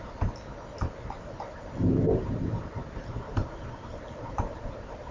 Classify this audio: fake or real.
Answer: real